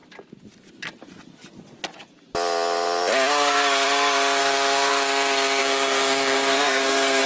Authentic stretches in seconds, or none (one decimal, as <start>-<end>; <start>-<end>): 0.0-4.4; 4.9-5.6